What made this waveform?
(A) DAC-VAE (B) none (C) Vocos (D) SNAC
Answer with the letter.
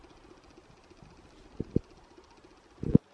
B